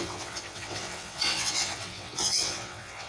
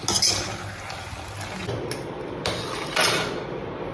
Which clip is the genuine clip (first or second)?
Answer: second